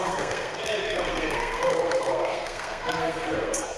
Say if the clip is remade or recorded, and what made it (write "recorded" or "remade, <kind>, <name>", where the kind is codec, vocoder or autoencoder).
remade, codec, SNAC